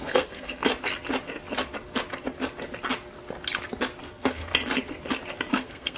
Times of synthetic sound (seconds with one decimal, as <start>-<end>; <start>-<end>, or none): 0.0-0.7; 4.0-4.5; 5.5-6.0